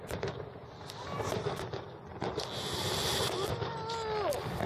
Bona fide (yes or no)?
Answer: yes